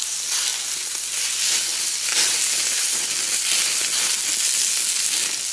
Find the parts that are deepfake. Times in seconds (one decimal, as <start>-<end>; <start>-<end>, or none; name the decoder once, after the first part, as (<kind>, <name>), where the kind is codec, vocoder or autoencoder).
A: none